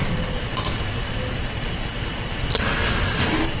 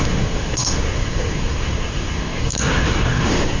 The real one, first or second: first